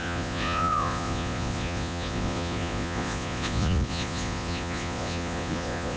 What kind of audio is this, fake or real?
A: fake